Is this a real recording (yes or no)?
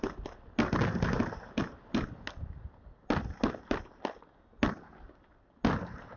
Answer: yes